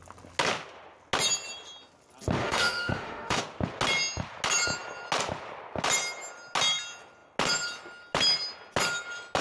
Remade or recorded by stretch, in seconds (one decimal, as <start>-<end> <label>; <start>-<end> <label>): 0.0-2.4 recorded; 2.4-3.4 remade; 3.4-9.4 recorded